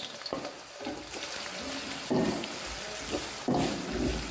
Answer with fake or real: real